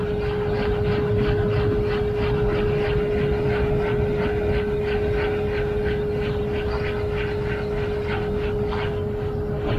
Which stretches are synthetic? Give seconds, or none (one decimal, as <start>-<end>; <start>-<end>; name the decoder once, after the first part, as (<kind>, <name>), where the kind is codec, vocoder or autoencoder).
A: none